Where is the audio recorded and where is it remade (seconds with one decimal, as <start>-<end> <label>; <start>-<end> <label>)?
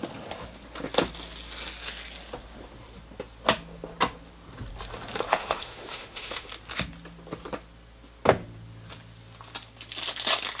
0.0-5.3 recorded; 5.3-6.5 remade; 6.5-10.6 recorded